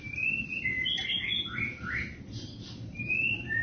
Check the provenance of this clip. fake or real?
fake